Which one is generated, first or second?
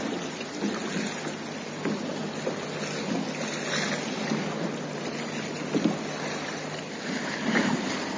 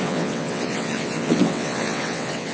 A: second